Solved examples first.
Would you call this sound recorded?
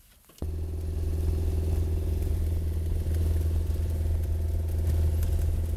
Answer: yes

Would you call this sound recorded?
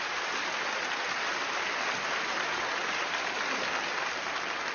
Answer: yes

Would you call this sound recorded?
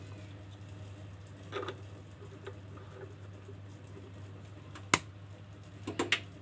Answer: yes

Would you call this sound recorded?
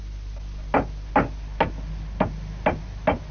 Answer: yes